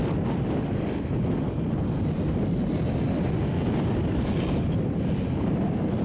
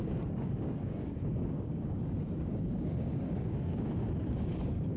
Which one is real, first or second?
first